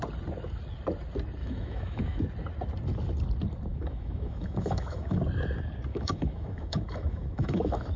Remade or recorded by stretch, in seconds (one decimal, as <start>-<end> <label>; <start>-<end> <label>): 0.0-1.4 recorded; 1.4-2.2 remade; 2.2-3.7 recorded; 3.7-5.2 remade; 5.2-5.9 recorded; 5.9-8.0 remade